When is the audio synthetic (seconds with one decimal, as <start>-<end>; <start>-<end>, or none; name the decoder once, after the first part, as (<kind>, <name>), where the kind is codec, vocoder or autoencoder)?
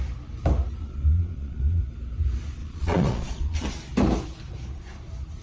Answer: 0.8-1.8 (vocoder, Vocos); 2.6-3.7